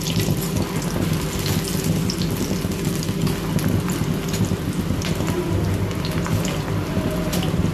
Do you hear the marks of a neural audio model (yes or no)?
yes